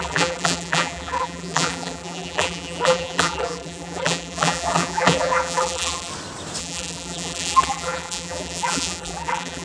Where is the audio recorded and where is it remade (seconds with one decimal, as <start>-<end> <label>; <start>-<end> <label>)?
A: 0.0-6.1 remade; 6.1-6.6 recorded; 6.6-9.6 remade